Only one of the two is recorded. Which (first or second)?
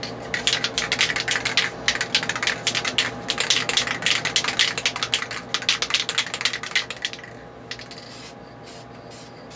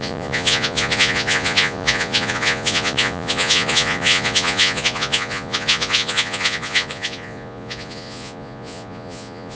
first